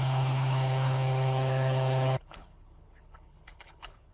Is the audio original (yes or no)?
no